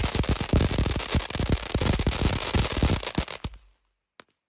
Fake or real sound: real